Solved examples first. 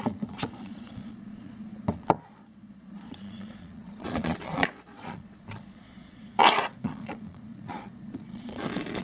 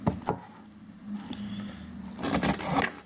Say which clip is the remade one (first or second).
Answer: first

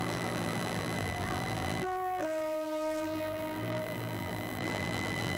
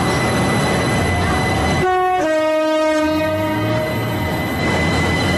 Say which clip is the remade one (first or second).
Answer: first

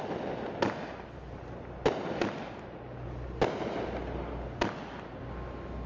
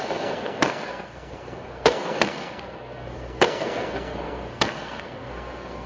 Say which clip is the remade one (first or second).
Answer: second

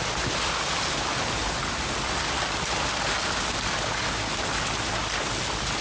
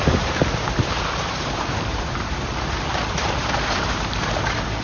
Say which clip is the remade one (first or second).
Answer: second